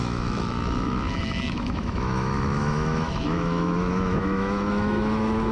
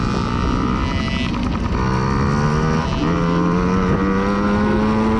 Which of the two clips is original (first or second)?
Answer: second